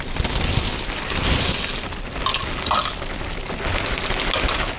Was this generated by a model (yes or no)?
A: no